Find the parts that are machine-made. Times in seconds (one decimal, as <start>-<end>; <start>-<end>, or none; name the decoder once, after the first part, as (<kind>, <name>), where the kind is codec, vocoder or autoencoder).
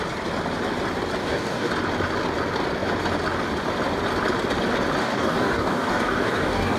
1.2-1.7 (codec, DAC); 5.0-6.8